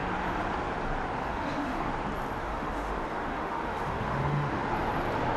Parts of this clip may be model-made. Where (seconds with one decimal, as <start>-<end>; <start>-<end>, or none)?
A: 1.2-1.9; 2.4-4.6